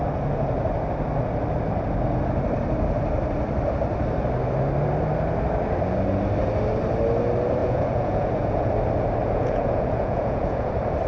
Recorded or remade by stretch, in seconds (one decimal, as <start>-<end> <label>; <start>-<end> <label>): 0.0-7.6 recorded; 7.6-8.7 remade; 8.7-9.2 recorded; 9.2-10.7 remade; 10.7-11.1 recorded